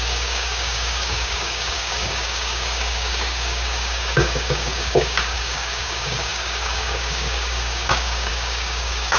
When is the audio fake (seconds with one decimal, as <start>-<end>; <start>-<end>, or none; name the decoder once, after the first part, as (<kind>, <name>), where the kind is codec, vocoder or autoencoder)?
0.0-9.2 (codec, DAC)